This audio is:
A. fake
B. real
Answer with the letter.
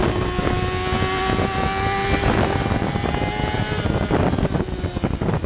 B